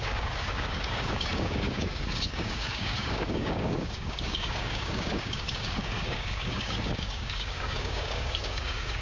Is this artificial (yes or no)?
yes